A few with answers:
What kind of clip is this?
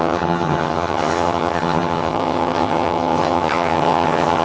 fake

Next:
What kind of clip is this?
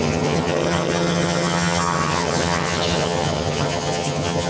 fake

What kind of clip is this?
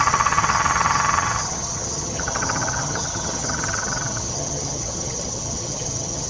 fake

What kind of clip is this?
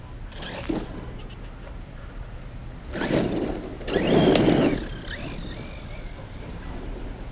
real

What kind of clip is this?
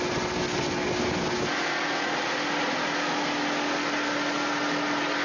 real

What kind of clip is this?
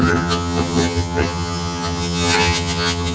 fake